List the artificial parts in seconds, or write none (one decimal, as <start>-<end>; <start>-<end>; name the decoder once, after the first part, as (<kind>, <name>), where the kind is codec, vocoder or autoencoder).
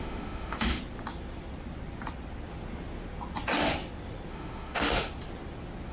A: 0.0-0.8 (autoencoder, DAC-VAE); 4.3-5.1